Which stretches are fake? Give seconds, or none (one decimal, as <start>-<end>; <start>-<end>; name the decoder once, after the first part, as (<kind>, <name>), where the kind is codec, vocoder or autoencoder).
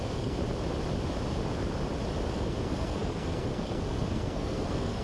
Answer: 0.0-0.4 (codec, SNAC); 2.3-5.0